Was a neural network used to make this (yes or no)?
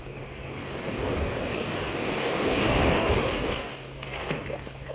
yes